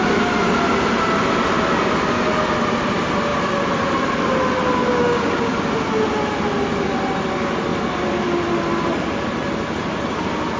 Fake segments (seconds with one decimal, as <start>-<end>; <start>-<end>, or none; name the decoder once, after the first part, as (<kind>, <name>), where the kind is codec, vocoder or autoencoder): 4.9-5.5 (codec, DAC)